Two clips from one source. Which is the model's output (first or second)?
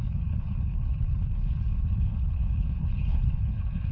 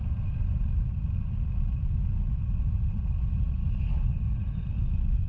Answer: first